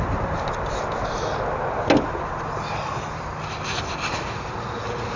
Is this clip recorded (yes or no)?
yes